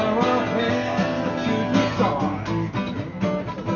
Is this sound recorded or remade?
recorded